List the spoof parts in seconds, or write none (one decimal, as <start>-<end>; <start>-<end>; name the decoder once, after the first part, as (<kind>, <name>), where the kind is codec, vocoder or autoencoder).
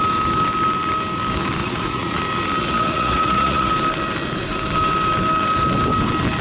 1.6-2.2 (vocoder, Vocos); 2.6-3.7